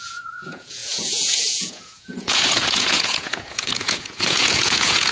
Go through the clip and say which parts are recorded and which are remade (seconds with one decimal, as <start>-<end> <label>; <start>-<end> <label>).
0.0-5.1 remade